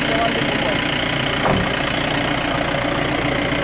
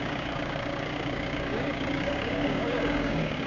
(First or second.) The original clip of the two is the first